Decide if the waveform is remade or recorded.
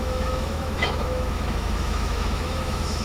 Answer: remade